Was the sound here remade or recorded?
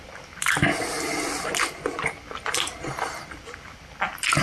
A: recorded